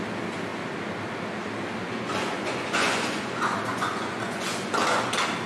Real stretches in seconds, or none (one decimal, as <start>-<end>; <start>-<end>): 0.0-1.8; 5.1-5.5